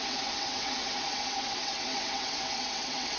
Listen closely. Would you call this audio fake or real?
fake